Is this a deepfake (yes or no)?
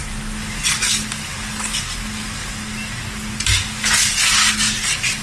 no